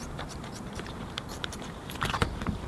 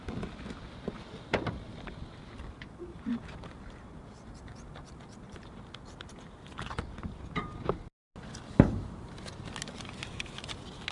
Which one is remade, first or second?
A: first